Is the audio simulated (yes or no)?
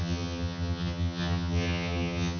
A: yes